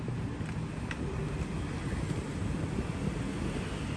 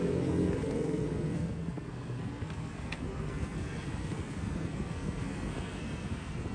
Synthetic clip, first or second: second